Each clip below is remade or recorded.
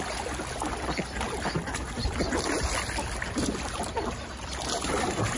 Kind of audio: recorded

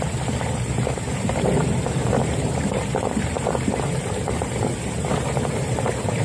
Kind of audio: remade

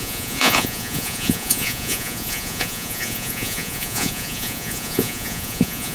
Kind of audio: remade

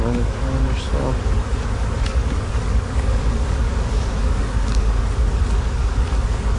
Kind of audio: remade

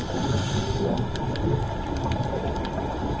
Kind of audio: recorded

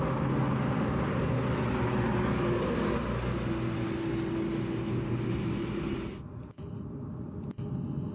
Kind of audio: recorded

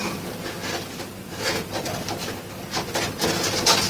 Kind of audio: recorded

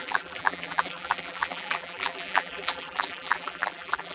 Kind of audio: remade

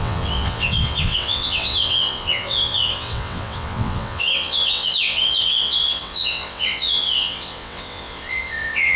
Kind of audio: remade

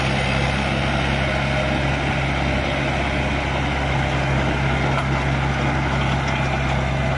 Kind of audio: recorded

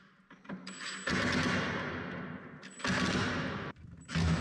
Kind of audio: recorded